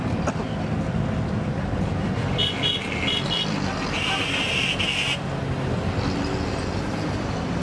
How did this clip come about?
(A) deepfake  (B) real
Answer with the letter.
B